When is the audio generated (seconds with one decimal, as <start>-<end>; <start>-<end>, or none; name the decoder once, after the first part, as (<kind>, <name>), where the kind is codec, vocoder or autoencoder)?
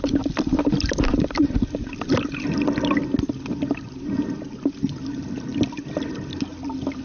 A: none